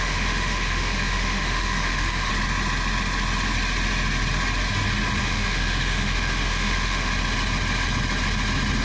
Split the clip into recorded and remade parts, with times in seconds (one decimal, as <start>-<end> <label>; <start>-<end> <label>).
0.0-2.3 remade; 2.3-5.2 recorded; 5.2-7.1 remade; 7.1-8.8 recorded